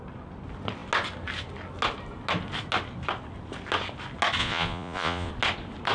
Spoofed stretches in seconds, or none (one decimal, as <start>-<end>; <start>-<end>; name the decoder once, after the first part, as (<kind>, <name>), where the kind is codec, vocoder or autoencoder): 4.4-5.3 (vocoder, Vocos)